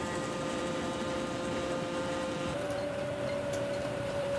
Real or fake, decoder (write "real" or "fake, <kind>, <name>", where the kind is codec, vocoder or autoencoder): fake, vocoder, BigVGAN v2